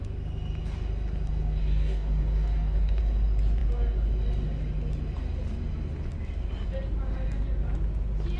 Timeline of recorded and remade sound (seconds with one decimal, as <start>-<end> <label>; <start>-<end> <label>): 0.0-1.6 recorded; 1.6-3.0 remade; 3.0-8.4 recorded